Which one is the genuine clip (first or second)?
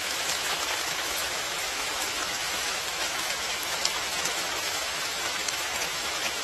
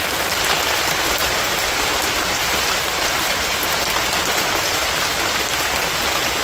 second